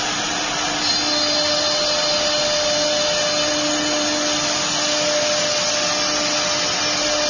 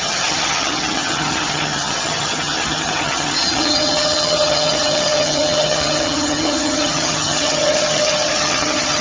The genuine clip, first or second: first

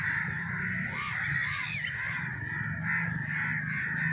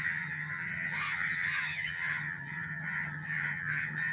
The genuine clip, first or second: first